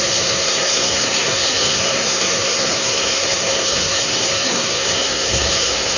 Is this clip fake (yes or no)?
yes